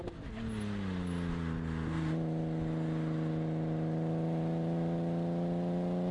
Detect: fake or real real